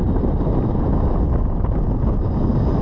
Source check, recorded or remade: recorded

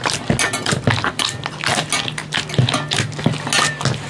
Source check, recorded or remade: recorded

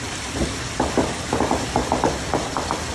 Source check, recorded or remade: recorded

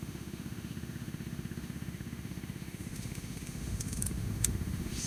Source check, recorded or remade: remade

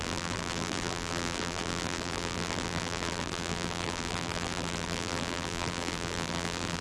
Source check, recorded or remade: remade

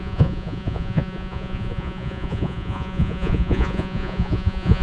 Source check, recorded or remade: remade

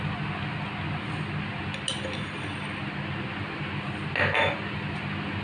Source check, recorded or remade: recorded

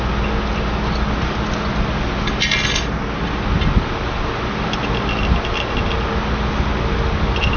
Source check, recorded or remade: recorded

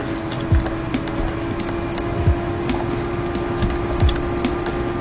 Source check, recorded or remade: recorded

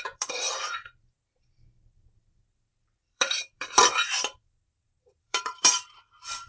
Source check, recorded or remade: remade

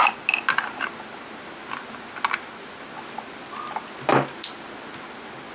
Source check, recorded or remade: recorded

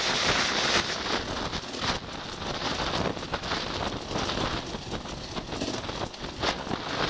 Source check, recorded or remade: recorded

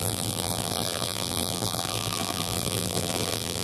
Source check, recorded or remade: remade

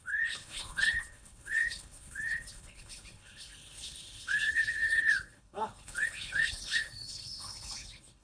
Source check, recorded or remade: remade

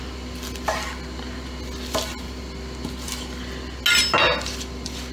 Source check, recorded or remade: recorded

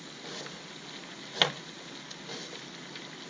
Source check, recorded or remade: recorded